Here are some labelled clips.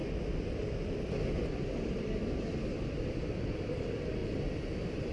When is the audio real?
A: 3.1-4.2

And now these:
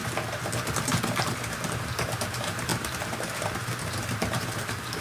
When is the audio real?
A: 0.0-1.0

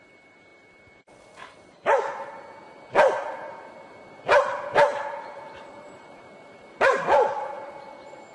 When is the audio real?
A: 0.0-4.9; 7.9-8.3

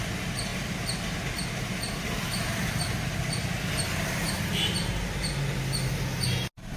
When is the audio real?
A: 0.0-6.8

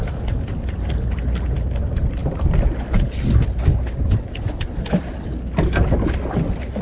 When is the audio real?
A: 0.0-6.8

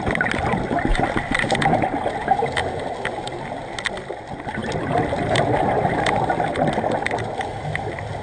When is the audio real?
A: 0.0-0.9; 1.5-4.6; 6.7-8.2

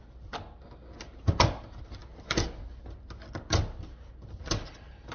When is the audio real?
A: 0.0-5.1

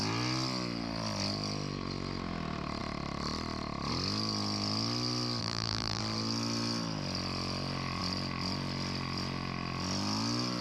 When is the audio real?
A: 0.0-5.4; 6.0-10.6